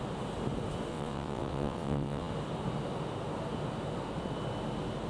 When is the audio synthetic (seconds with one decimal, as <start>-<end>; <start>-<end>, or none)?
0.9-2.3